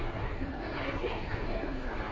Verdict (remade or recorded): remade